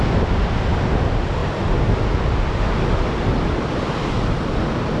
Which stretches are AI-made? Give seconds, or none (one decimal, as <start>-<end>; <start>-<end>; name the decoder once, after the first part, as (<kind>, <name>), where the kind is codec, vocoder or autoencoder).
none